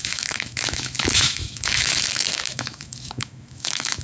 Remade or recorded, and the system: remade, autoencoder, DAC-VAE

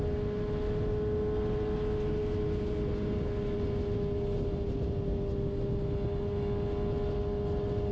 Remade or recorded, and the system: recorded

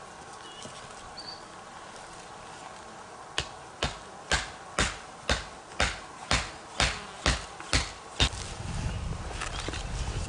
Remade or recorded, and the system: recorded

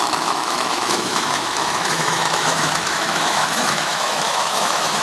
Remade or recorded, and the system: remade, autoencoder, DAC-VAE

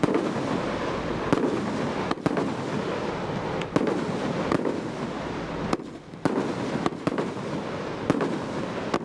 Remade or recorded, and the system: recorded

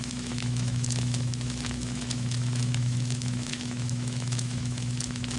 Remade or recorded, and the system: remade, autoencoder, DAC-VAE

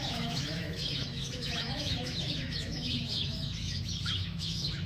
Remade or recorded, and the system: remade, autoencoder, DAC-VAE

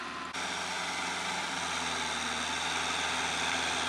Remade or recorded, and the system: recorded